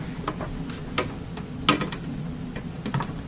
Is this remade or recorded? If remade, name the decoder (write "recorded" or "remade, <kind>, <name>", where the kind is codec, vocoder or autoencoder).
recorded